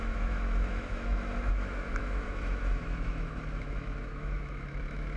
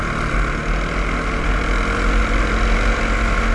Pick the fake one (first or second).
first